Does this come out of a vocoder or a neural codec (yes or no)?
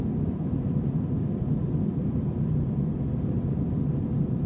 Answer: no